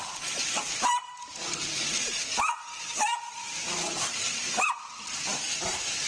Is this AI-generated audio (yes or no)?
yes